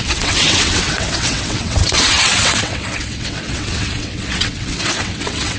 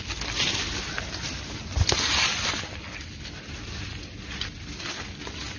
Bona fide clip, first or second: second